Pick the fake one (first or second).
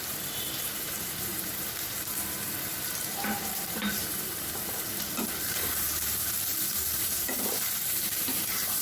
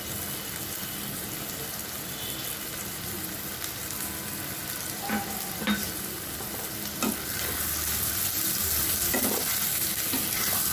first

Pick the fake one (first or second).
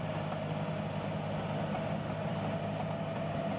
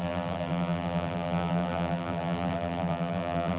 second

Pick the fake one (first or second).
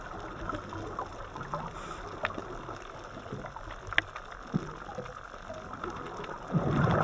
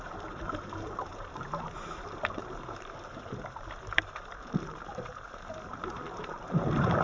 second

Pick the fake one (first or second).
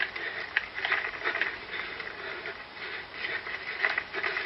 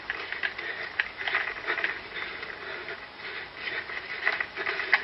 first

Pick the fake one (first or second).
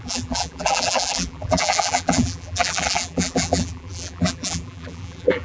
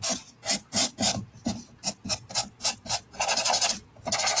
first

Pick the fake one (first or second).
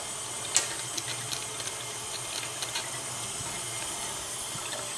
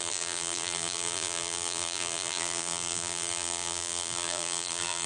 second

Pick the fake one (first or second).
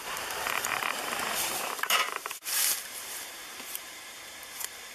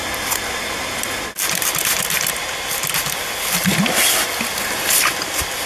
first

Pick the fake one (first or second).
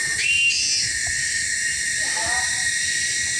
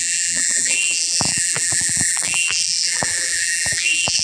second